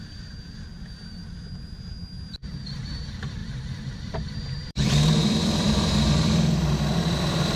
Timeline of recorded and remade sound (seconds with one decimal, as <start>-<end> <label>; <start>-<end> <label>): 0.0-0.7 remade; 0.7-1.3 recorded; 1.3-3.4 remade; 3.4-3.9 recorded; 3.9-7.6 remade